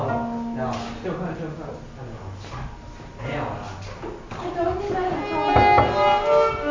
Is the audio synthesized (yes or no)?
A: no